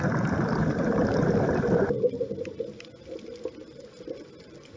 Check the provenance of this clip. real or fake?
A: real